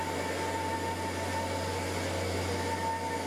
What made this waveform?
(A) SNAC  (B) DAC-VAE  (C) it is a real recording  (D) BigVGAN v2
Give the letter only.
C